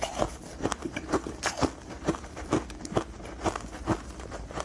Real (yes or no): yes